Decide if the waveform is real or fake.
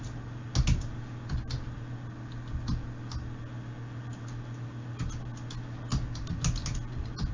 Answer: real